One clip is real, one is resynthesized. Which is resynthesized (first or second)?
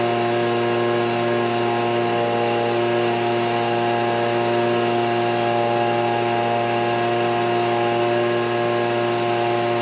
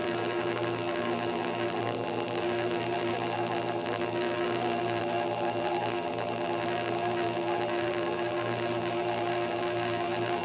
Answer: second